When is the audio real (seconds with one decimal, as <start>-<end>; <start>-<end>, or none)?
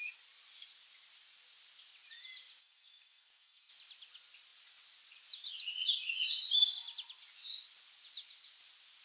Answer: 0.0-2.6; 3.7-9.0